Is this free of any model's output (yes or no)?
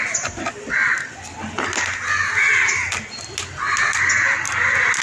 yes